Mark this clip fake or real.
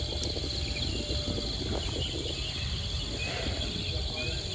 real